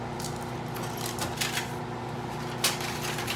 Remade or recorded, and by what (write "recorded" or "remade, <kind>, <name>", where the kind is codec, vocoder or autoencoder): recorded